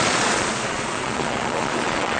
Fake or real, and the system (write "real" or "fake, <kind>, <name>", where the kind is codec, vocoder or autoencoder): fake, vocoder, Vocos